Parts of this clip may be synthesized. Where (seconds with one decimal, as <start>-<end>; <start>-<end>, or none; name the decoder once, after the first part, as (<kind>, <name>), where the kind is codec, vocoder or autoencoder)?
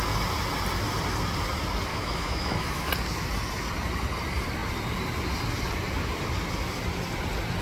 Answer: 1.9-2.9 (autoencoder, DAC-VAE)